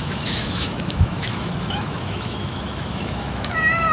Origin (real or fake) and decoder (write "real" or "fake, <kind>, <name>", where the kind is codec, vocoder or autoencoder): fake, autoencoder, DAC-VAE